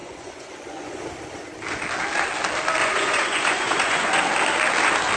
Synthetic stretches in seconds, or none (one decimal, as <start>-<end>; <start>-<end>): 0.0-1.0; 2.8-4.2